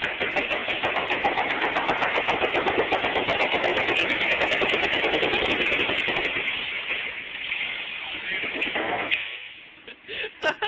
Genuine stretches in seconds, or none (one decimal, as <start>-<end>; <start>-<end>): 0.0-8.8; 9.5-10.7